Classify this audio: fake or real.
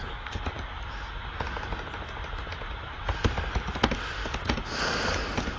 real